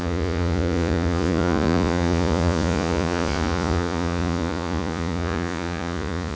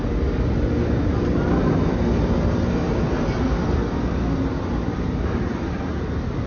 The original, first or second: second